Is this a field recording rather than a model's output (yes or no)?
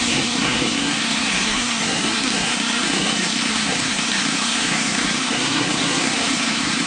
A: no